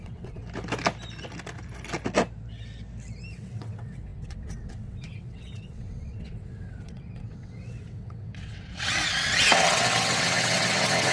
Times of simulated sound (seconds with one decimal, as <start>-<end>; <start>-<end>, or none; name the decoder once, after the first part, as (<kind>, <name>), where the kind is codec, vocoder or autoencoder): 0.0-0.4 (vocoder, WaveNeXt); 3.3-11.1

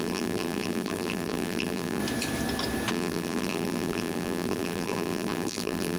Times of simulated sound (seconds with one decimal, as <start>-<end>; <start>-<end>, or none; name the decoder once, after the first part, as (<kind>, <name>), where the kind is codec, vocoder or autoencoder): 0.0-2.0 (vocoder, BigVGAN v2); 2.9-6.0

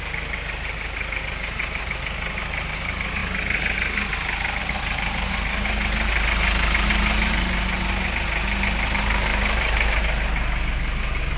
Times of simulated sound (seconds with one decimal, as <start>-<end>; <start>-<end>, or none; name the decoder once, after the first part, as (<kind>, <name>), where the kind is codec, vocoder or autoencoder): 9.3-10.0 (vocoder, BigVGAN v2)

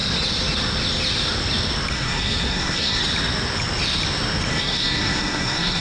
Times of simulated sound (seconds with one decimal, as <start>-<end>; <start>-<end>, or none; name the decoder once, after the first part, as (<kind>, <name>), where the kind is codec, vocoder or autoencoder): 1.9-3.0 (codec, SNAC); 4.5-5.8

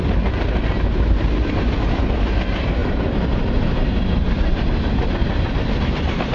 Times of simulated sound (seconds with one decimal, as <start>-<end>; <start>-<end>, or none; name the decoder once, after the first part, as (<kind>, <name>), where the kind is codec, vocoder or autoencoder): 2.8-5.1 (vocoder, BigVGAN v2)